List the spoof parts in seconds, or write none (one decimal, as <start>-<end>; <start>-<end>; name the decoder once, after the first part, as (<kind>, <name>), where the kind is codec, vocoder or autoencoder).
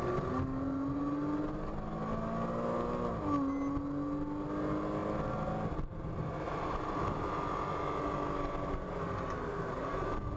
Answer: none